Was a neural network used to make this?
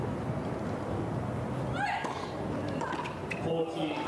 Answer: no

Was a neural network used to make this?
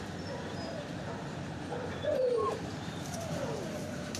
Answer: yes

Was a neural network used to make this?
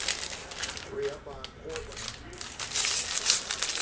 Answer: no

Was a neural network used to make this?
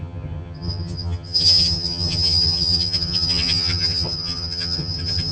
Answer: yes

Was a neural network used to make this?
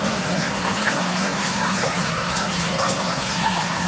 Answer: yes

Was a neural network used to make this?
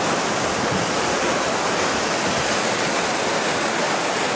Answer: no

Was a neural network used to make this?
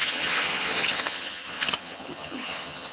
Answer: yes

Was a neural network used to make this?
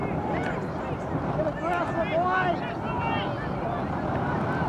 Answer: no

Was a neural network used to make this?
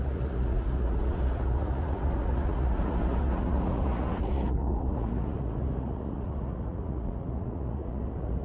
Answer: yes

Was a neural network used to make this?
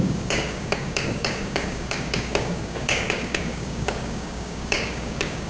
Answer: yes